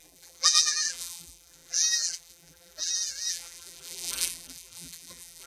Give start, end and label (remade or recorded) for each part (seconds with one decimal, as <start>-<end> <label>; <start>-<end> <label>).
0.0-5.5 remade